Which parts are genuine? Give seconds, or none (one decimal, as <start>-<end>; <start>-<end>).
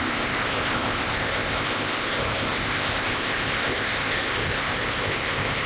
none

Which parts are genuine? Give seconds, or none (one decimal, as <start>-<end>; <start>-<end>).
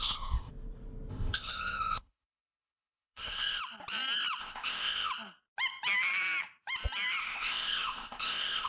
0.5-1.1; 3.6-4.4; 5.1-7.2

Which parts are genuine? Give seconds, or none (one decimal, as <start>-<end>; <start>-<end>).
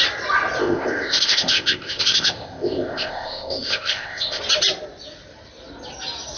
0.0-0.6; 4.4-6.4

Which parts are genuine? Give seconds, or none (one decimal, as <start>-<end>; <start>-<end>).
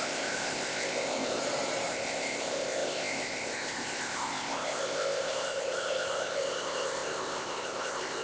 1.4-1.9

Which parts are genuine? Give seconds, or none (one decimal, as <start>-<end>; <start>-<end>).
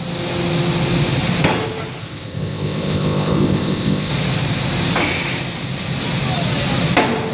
0.0-2.0; 4.1-7.3